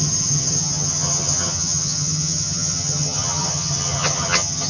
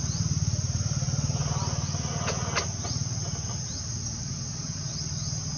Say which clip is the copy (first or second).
first